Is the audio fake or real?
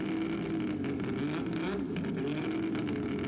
real